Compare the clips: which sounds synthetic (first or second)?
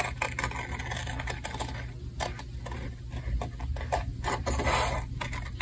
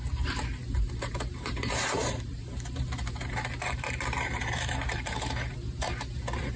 second